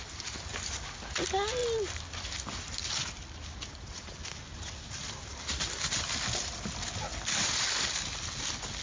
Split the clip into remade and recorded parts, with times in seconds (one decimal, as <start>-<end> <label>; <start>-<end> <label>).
0.0-8.8 recorded